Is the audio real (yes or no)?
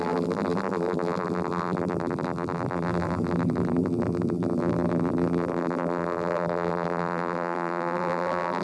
no